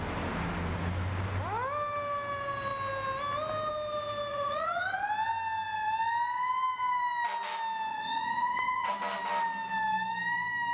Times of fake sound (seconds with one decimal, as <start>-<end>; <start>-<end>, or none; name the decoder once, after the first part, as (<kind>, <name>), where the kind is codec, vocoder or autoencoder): 4.3-5.1 (vocoder, Vocos); 7.9-8.9